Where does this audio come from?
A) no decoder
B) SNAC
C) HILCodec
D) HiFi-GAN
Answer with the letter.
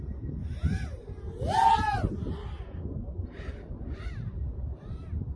A